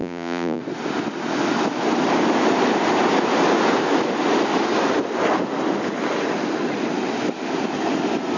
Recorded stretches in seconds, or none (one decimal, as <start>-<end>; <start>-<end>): 0.6-8.4